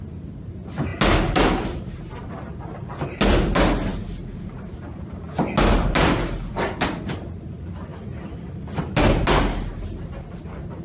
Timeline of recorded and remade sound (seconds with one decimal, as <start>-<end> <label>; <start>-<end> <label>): 0.0-10.8 recorded